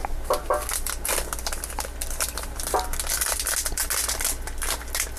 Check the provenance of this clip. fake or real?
real